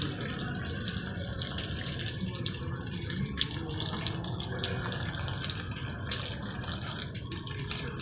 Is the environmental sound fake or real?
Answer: real